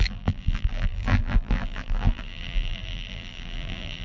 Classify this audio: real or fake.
fake